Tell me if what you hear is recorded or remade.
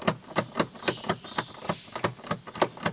recorded